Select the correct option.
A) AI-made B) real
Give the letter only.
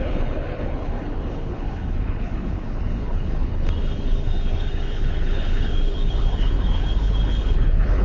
A